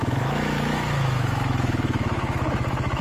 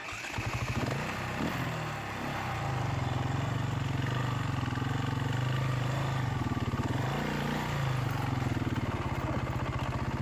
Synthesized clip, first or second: first